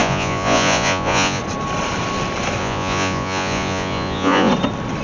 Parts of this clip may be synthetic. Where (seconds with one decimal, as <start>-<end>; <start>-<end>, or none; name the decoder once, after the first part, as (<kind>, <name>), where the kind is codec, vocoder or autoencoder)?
0.0-1.4 (vocoder, Vocos); 2.6-4.5